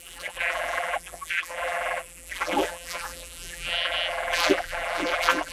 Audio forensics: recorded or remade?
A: remade